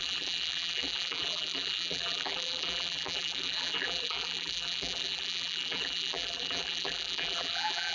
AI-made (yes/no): yes